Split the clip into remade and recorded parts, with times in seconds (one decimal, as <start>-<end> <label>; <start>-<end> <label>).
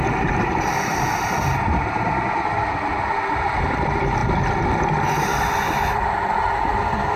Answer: 0.0-7.2 recorded